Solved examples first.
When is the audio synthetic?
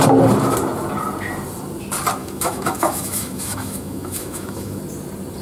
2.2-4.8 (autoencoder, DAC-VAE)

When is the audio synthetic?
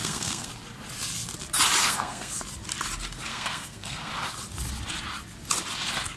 0.0-0.5 (codec, SNAC); 1.8-2.3; 3.3-4.1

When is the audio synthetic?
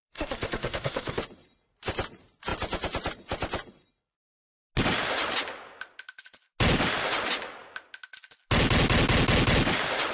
0.0-1.2 (codec, SNAC)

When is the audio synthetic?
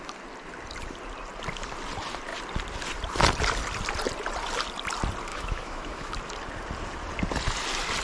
5.3-6.1 (autoencoder, DAC-VAE)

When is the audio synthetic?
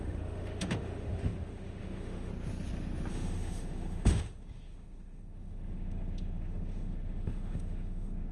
0.0-2.3 (autoencoder, DAC-VAE); 3.1-8.3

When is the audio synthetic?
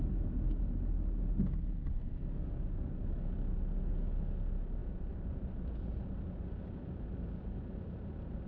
4.8-6.2 (vocoder, BigVGAN v2)